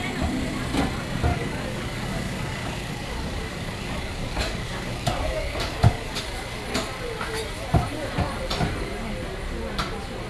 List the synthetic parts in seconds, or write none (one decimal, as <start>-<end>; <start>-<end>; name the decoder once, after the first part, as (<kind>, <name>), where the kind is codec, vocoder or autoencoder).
1.3-6.2 (codec, DAC)